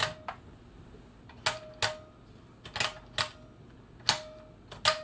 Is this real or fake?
real